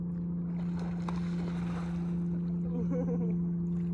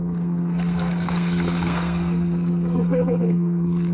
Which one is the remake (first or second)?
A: second